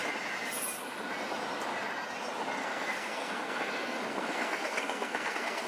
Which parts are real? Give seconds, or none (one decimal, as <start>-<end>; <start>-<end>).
0.0-2.6